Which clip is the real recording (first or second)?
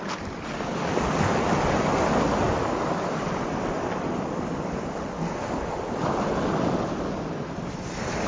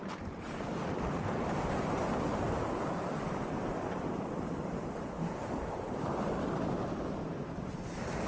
first